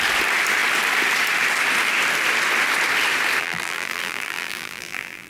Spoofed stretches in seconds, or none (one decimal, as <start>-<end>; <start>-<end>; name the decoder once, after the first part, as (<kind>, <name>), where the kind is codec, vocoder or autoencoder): 3.4-5.3 (vocoder, BigVGAN v2)